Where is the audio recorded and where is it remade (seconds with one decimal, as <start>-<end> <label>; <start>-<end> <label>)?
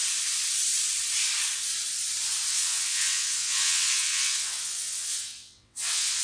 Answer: 0.0-2.5 recorded; 2.5-6.2 remade